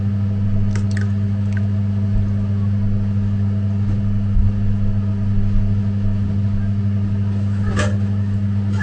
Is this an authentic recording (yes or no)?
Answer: yes